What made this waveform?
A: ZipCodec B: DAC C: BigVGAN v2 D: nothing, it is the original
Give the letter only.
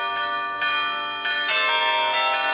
D